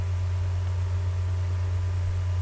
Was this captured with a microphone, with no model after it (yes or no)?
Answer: yes